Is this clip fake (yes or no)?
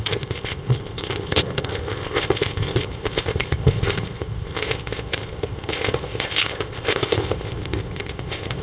yes